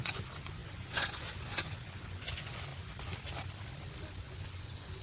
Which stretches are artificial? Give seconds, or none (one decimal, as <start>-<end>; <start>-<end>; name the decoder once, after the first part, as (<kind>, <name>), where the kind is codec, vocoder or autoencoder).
0.0-2.7 (vocoder, Vocos); 4.1-5.0